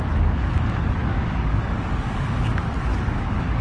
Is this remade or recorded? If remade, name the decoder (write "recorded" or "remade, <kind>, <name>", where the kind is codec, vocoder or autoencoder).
remade, codec, DAC